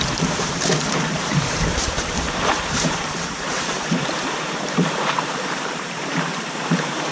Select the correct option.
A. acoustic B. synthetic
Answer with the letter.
B